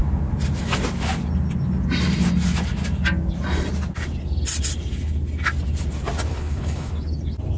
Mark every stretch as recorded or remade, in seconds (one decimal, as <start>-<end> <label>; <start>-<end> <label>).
0.0-6.3 recorded; 6.3-6.9 remade; 6.9-7.6 recorded